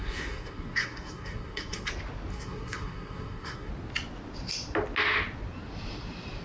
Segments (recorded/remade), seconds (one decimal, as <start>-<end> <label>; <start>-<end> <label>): 0.0-1.9 remade; 1.9-2.3 recorded; 2.3-3.7 remade; 3.7-6.4 recorded